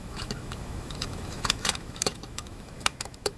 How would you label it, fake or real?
fake